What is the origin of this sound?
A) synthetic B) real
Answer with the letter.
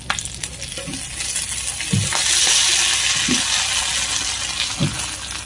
B